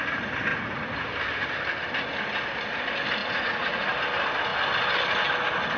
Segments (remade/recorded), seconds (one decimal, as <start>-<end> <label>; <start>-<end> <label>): 0.0-0.5 recorded; 0.5-1.1 remade; 1.1-3.2 recorded; 3.2-3.9 remade; 3.9-5.8 recorded